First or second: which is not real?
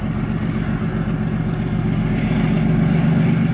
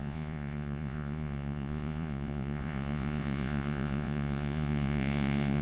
second